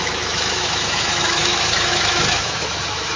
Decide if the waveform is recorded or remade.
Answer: remade